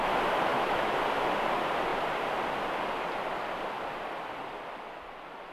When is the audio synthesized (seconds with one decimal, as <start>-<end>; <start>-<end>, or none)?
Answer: 0.5-1.0